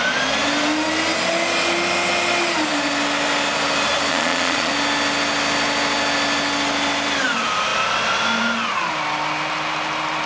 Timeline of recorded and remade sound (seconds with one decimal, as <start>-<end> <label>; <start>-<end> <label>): 0.0-4.1 recorded; 4.1-4.7 remade; 4.7-10.3 recorded